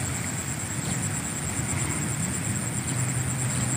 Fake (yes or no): no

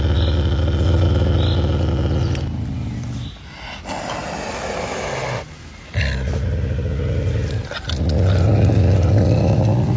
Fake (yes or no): no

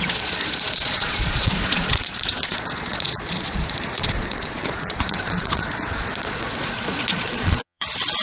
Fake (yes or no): yes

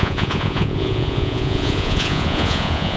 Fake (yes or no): yes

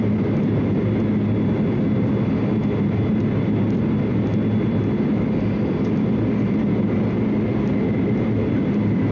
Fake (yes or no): no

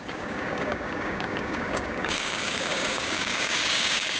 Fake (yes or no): yes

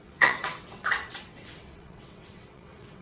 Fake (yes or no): yes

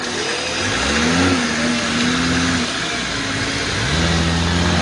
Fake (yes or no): no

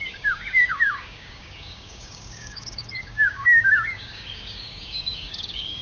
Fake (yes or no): yes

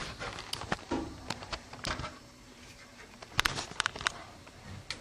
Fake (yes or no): yes